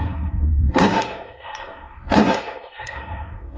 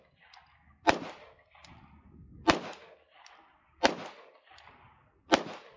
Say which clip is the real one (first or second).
second